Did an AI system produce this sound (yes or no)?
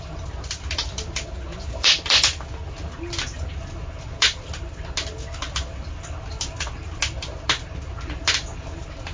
no